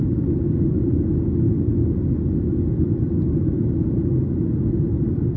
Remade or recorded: recorded